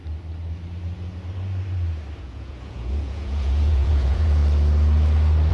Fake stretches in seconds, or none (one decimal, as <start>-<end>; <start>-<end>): 2.2-4.4